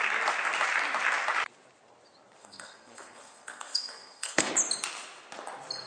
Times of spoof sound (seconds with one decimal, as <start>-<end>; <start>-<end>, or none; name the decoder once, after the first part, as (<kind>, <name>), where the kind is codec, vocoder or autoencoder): 2.4-4.5 (codec, SNAC)